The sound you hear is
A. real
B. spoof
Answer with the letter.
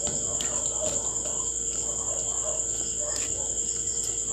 B